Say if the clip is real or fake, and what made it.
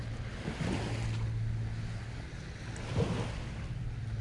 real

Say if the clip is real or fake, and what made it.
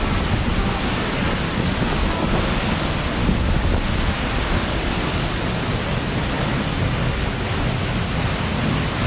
real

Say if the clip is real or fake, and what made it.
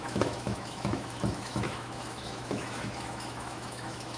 fake, autoencoder, DAC-VAE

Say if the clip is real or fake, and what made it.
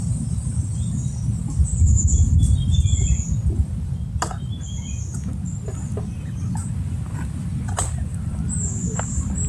real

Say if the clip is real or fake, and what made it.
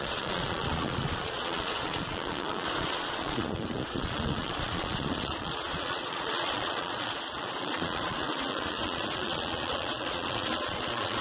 fake, vocoder, Vocos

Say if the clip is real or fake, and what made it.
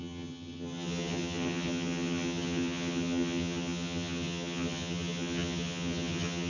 fake, vocoder, HiFi-GAN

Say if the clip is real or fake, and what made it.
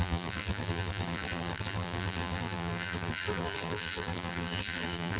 fake, vocoder, BigVGAN v2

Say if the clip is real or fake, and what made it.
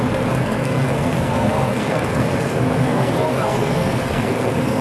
fake, codec, SNAC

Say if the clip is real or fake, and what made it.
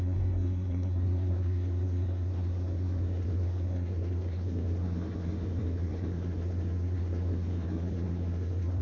fake, codec, SNAC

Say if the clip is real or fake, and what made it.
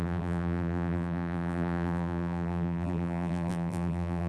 fake, vocoder, BigVGAN v2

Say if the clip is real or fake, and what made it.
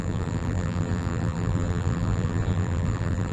fake, vocoder, BigVGAN v2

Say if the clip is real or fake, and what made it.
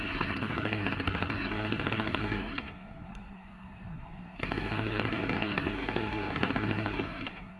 fake, codec, SNAC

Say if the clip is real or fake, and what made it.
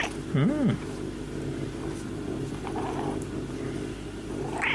real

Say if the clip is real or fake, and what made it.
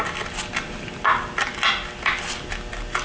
real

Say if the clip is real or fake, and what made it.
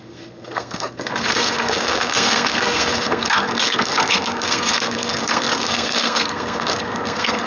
fake, codec, SNAC